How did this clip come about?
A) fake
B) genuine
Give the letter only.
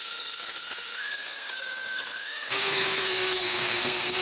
A